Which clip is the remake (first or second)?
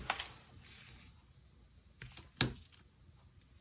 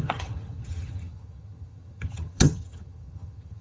second